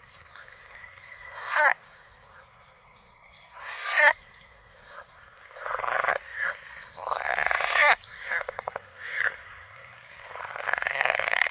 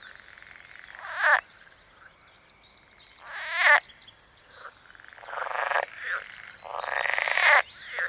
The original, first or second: second